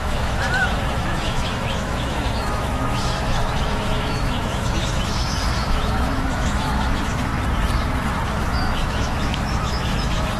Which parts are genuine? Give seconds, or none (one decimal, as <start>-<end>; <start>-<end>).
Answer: 7.3-8.4